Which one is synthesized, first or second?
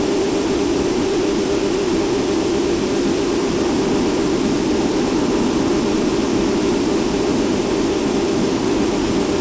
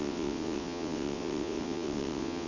second